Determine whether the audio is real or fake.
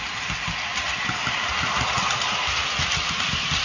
real